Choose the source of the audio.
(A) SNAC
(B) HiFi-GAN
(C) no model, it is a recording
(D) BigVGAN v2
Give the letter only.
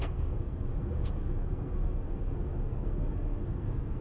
A